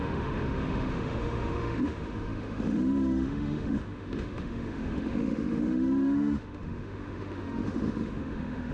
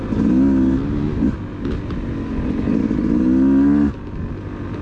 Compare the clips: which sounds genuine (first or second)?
second